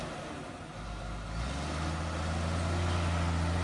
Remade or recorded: recorded